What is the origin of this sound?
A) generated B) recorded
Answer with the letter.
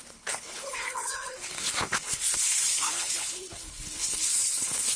A